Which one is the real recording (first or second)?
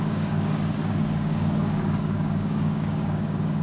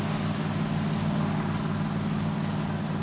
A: second